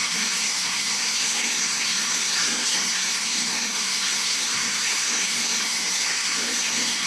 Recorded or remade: remade